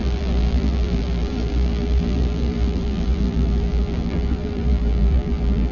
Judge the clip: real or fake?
fake